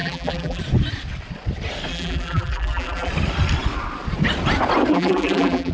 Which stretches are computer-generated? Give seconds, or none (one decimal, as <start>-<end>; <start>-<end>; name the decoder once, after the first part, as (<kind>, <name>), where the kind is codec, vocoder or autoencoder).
0.0-0.6 (vocoder, BigVGAN v2); 1.9-3.1; 4.9-5.7